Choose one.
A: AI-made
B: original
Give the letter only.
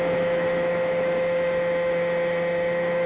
A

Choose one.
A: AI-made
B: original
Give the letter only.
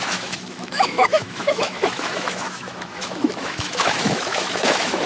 A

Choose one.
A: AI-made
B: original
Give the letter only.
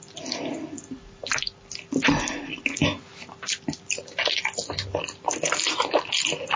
B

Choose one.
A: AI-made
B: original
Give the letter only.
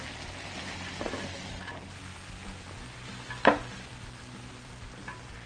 B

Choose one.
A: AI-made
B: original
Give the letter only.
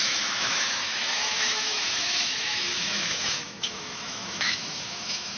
A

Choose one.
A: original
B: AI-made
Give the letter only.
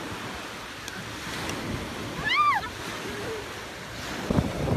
A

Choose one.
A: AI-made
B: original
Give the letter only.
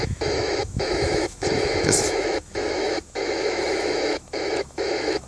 A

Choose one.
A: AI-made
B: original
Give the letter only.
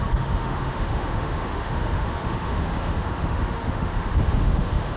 A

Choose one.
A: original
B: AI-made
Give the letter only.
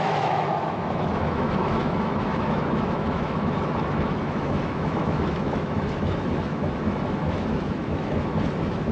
B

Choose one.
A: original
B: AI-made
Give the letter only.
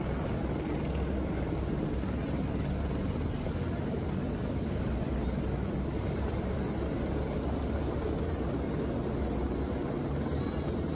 A